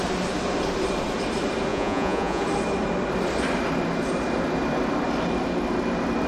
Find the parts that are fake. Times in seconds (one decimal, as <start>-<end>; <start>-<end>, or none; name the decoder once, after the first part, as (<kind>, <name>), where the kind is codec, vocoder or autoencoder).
1.7-2.4 (vocoder, Vocos)